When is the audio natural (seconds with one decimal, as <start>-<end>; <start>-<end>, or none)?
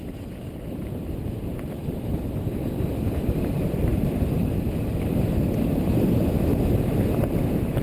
3.2-7.8